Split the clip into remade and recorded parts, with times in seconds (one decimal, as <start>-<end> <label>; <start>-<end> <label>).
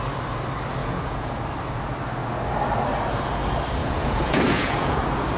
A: 0.0-0.8 recorded; 0.8-1.4 remade; 1.4-3.8 recorded; 3.8-5.0 remade; 5.0-5.4 recorded